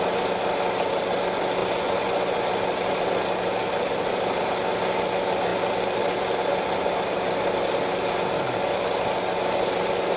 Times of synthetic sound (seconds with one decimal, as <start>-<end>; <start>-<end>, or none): 1.6-2.5